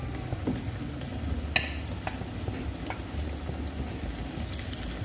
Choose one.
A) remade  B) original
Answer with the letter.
B